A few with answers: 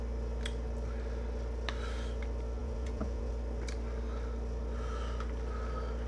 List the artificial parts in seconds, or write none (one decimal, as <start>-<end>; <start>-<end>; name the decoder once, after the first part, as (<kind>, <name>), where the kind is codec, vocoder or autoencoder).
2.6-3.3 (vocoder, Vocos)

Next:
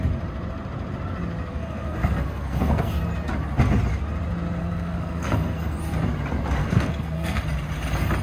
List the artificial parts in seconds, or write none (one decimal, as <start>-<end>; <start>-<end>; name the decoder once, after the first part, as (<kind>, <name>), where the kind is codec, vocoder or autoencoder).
1.5-2.9 (codec, SNAC); 4.6-5.8; 6.6-7.4

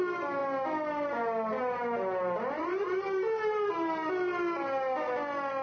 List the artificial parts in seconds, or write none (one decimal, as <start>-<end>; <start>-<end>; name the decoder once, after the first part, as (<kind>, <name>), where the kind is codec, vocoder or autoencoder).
2.6-3.7 (vocoder, BigVGAN v2)

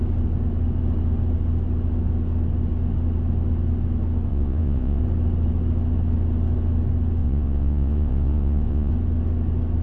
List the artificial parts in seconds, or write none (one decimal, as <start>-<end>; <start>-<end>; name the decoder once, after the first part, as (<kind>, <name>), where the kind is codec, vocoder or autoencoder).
4.3-5.0 (vocoder, Vocos); 7.2-8.9